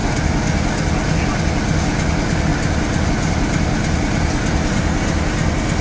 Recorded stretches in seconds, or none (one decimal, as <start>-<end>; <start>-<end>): 0.0-2.5; 3.1-5.8